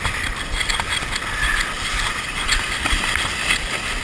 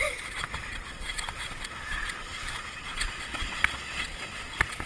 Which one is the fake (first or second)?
second